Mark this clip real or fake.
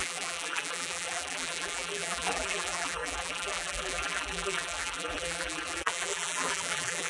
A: fake